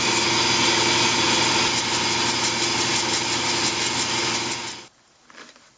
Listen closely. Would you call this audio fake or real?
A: real